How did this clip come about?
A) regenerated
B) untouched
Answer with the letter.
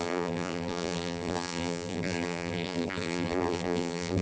A